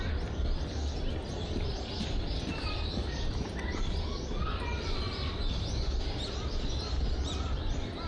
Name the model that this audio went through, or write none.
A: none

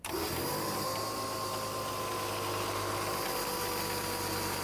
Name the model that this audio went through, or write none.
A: none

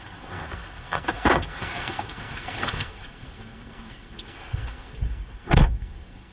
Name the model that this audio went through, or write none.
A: codec, SNAC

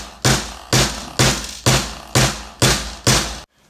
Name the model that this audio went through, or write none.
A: none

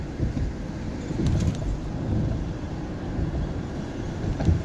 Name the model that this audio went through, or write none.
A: vocoder, BigVGAN v2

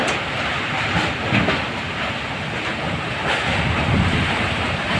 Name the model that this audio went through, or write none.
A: none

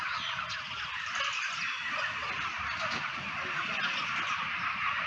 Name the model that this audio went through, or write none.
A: none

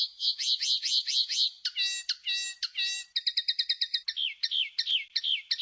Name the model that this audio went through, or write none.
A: none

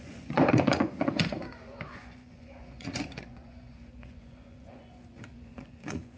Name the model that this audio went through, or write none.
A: vocoder, Vocos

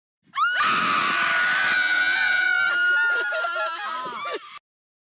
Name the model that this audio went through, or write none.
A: none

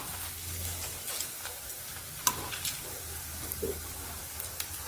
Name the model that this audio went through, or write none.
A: none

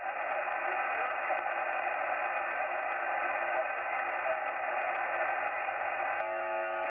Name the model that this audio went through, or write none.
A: none